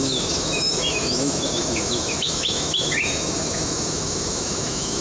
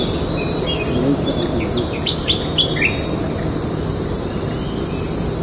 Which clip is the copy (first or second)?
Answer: first